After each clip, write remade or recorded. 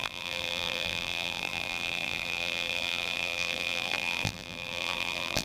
remade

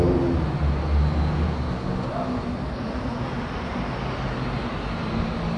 recorded